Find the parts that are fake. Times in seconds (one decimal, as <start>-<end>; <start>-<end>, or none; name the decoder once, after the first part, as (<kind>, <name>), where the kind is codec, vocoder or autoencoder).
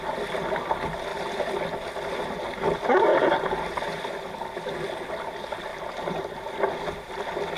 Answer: 3.1-3.8 (vocoder, BigVGAN v2); 5.7-6.5